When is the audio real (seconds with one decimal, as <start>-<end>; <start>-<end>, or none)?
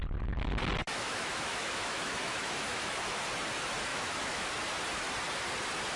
0.0-0.9; 3.2-3.9; 4.5-6.0